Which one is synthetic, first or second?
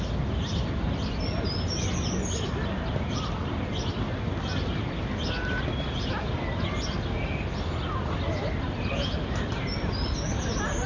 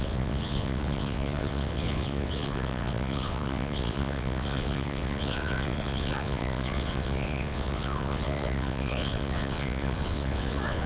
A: second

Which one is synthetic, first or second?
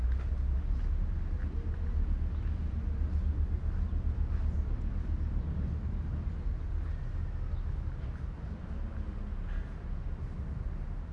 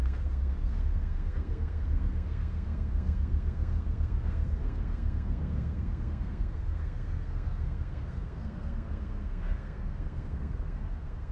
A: second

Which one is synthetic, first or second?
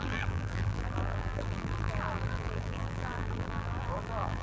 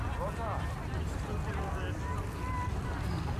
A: first